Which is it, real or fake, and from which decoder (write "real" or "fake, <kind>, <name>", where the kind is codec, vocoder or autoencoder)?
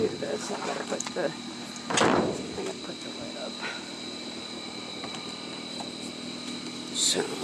real